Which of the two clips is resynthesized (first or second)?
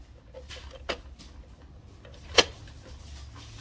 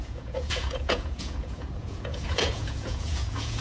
second